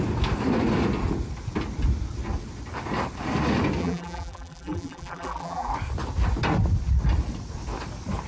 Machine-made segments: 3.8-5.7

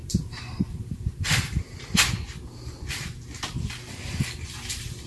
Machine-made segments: 0.0-1.8

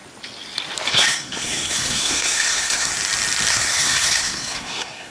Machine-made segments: 0.9-2.9; 3.5-5.1